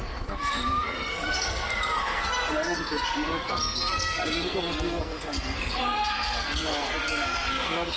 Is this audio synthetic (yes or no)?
yes